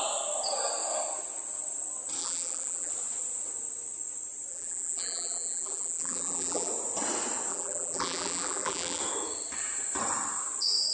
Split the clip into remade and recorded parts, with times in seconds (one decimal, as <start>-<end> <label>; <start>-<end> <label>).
0.0-2.2 recorded; 2.2-2.9 remade; 2.9-4.5 recorded; 4.5-6.7 remade; 6.7-7.5 recorded; 7.5-9.0 remade; 9.0-10.9 recorded